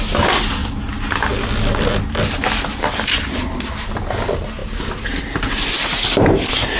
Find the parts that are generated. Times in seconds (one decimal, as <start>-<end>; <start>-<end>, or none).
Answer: none